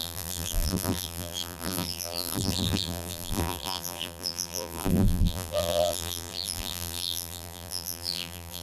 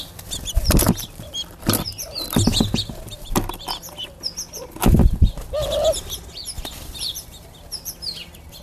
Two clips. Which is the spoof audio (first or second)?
first